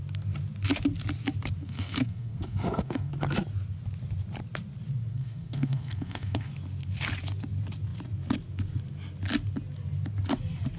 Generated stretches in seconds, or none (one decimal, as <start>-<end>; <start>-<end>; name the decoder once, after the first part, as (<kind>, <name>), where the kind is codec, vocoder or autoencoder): 1.6-3.1 (codec, SNAC); 5.1-6.5